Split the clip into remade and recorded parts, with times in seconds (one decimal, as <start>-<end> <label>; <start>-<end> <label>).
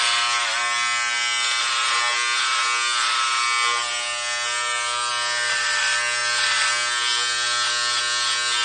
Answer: 0.0-8.6 recorded